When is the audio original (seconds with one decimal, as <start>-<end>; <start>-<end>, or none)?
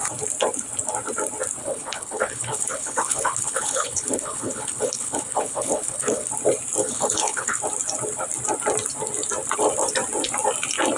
0.0-1.6; 6.3-6.8; 7.6-11.0